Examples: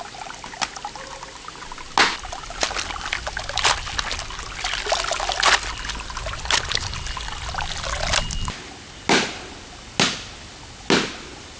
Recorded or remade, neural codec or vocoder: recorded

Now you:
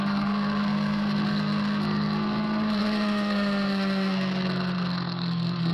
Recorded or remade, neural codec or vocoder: remade, codec, SNAC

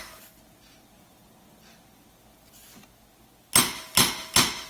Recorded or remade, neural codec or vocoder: recorded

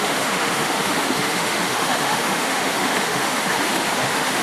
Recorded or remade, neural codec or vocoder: remade, autoencoder, DAC-VAE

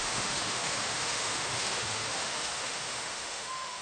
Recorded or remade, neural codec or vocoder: remade, autoencoder, DAC-VAE